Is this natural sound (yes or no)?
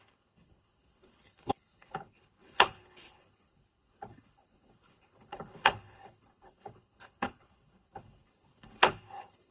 no